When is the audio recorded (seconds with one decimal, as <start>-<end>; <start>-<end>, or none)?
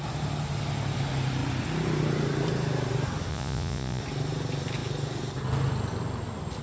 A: 0.0-3.3; 4.0-6.6